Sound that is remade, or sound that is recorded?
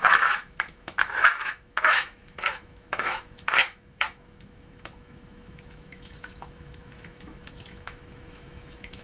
remade